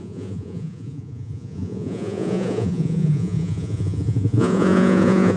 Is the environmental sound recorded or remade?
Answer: remade